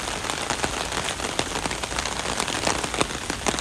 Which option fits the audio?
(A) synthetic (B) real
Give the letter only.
B